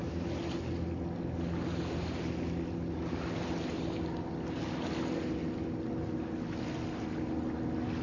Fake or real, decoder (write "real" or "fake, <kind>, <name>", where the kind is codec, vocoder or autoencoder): real